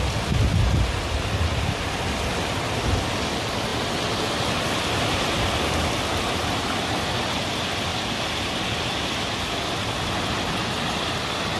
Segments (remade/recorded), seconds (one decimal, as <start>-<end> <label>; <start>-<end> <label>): 0.0-11.6 recorded